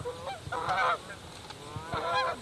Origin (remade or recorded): recorded